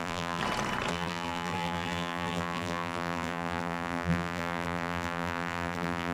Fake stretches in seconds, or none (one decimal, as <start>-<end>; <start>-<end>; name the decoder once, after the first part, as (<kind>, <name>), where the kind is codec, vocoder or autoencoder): 0.0-0.4 (vocoder, BigVGAN v2); 0.9-6.1